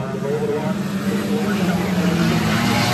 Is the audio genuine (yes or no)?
yes